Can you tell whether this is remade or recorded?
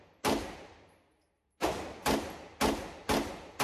recorded